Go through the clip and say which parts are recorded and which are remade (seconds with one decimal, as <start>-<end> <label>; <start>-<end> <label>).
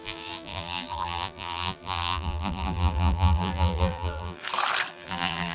0.0-4.4 remade; 4.4-4.9 recorded; 4.9-5.5 remade